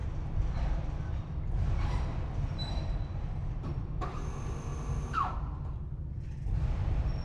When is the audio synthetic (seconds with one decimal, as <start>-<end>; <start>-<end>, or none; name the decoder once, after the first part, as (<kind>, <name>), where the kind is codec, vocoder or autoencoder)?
none